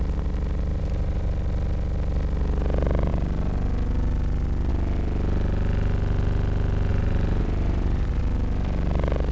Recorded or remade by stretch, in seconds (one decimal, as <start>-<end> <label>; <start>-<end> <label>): 0.0-0.7 recorded; 0.7-1.3 remade; 1.3-6.9 recorded; 6.9-8.2 remade; 8.2-9.3 recorded